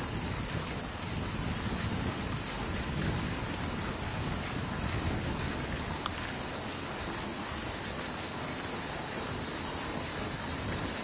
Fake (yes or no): no